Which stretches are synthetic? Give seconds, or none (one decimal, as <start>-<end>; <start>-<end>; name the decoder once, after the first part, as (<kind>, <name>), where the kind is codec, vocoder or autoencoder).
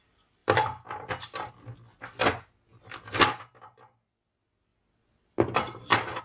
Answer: 0.4-1.5 (vocoder, BigVGAN v2); 2.7-3.3; 4.7-6.2